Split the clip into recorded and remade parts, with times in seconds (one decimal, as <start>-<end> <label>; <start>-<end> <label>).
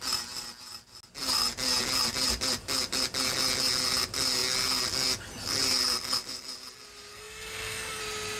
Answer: 0.0-7.1 recorded; 7.1-8.0 remade; 8.0-8.4 recorded